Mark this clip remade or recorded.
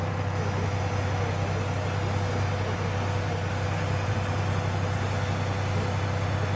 recorded